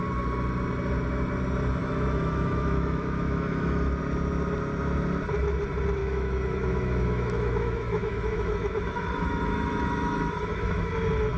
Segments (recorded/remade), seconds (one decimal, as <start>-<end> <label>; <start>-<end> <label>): 0.0-1.8 recorded; 1.8-4.0 remade; 4.0-6.0 recorded; 6.0-10.9 remade; 10.9-11.4 recorded